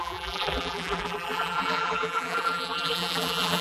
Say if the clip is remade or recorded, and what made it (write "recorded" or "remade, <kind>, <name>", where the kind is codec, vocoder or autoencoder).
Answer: remade, vocoder, BigVGAN v2